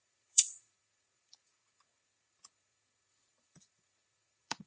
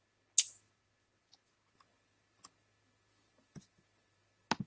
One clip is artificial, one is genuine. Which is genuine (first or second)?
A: second